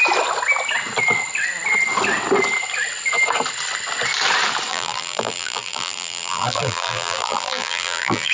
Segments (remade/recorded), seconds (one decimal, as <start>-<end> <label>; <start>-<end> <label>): 0.0-4.7 recorded; 4.7-8.3 remade